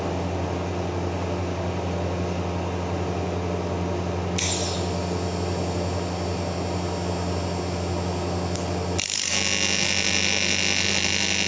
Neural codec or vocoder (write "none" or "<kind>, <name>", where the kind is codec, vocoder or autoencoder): none